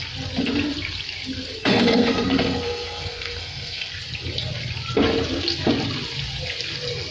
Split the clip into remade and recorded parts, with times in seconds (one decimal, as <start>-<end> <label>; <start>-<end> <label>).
0.0-1.6 recorded; 1.6-3.9 remade; 3.9-7.1 recorded